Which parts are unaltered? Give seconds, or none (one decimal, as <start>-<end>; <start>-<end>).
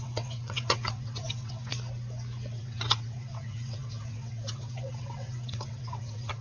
1.7-2.5